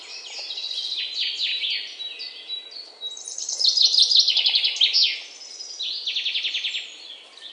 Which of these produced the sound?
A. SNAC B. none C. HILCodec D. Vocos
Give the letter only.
B